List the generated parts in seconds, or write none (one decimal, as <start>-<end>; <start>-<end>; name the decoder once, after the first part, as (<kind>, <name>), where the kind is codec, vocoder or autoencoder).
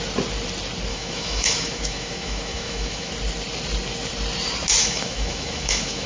0.9-3.1 (autoencoder, DAC-VAE); 4.8-6.1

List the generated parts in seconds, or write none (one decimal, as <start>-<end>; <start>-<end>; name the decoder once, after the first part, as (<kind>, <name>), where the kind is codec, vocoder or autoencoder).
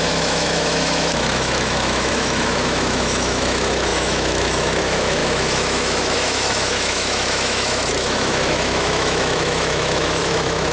0.0-10.7 (autoencoder, DAC-VAE)